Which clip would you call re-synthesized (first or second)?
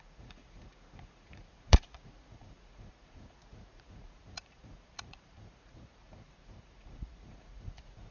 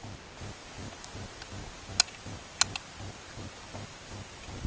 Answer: first